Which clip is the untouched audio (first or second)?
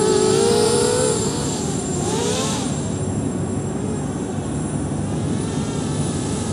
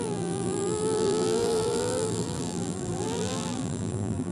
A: first